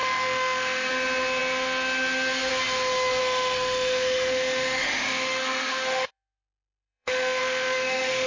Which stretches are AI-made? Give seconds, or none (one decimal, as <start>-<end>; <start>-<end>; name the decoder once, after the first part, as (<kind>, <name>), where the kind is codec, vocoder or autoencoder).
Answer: 0.0-0.9 (autoencoder, DAC-VAE); 3.2-8.3